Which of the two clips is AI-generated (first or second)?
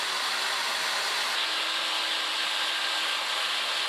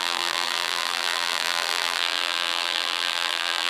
second